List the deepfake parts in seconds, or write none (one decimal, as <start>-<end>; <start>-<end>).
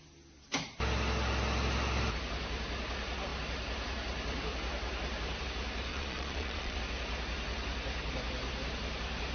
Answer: 5.9-6.8